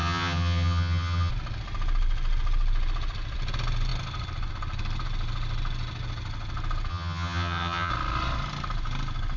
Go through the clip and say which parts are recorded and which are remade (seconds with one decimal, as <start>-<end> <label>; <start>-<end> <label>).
0.0-1.3 remade; 1.3-6.9 recorded; 6.9-7.9 remade; 7.9-9.4 recorded